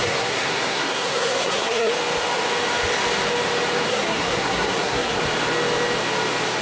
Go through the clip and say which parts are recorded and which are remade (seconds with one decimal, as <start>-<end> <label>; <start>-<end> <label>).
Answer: 0.0-1.9 remade; 1.9-3.9 recorded; 3.9-5.2 remade; 5.2-6.6 recorded